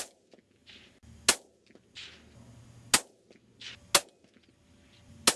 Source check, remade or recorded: recorded